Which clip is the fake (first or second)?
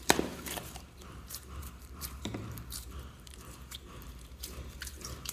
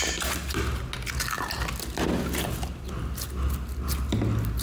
first